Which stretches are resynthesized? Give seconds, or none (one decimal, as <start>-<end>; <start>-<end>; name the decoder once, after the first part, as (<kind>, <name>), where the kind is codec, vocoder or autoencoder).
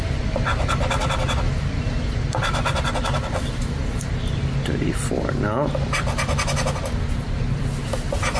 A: none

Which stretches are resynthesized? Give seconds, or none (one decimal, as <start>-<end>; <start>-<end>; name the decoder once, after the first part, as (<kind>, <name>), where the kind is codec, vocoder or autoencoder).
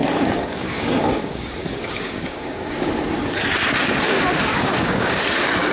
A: 0.0-2.9 (codec, DAC); 4.5-5.2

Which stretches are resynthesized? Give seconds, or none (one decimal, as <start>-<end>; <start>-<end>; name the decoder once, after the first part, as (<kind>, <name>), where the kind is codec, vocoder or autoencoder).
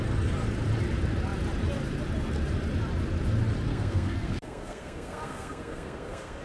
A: 3.7-6.4 (codec, SNAC)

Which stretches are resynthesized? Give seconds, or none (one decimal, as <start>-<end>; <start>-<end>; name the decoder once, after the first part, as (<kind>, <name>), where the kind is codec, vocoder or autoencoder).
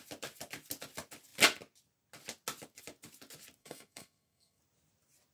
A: 3.6-4.6 (codec, SNAC)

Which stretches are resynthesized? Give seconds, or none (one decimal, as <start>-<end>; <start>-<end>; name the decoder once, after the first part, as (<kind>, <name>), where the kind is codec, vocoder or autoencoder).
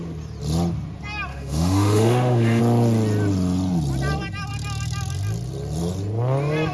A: 1.3-2.6 (autoencoder, DAC-VAE)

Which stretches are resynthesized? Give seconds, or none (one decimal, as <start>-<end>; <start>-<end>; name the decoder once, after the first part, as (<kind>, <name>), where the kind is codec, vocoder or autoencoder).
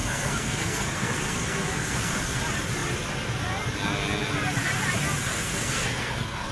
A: 0.0-2.4 (codec, SNAC); 5.2-6.5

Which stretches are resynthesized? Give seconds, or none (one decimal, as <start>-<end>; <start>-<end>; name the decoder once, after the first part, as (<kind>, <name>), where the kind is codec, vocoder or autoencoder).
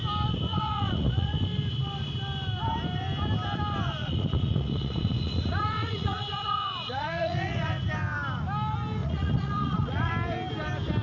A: 0.5-1.4 (vocoder, Vocos); 4.0-7.7; 9.0-10.1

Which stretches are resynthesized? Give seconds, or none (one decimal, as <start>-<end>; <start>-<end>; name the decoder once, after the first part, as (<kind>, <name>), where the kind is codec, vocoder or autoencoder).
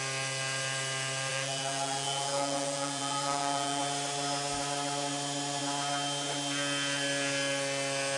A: 1.3-3.8 (vocoder, Vocos)